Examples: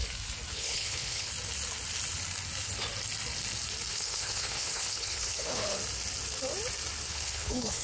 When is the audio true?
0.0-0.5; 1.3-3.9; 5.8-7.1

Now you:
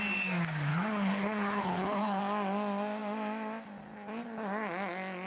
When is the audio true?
0.0-0.7; 2.2-5.3

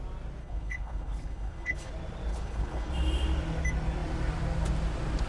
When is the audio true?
0.0-0.4; 1.9-2.3; 2.9-5.3

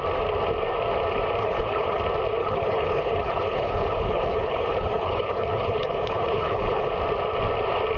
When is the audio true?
0.0-1.4; 2.0-2.4; 6.9-8.0

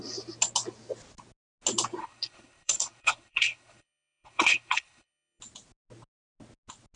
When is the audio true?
0.0-2.0; 5.4-7.0

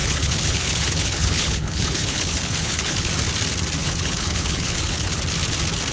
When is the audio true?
3.1-3.8; 5.2-5.9

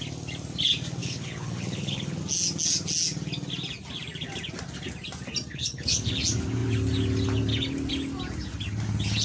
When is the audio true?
0.0-1.0; 2.2-5.5; 6.1-9.2

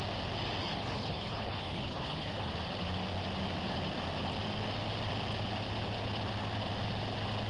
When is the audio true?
0.0-0.6; 2.5-7.5